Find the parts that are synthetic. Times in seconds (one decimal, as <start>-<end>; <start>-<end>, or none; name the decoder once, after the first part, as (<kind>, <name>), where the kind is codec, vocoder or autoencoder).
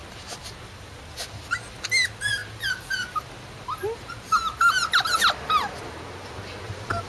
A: none